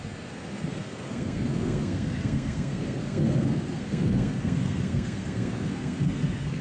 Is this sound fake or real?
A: fake